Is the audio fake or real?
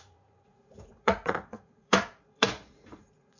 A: fake